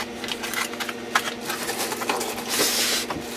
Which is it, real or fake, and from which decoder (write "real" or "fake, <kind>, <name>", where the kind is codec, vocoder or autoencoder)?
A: real